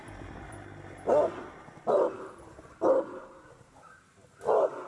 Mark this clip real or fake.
real